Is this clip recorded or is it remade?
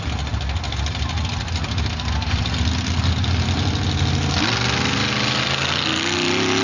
recorded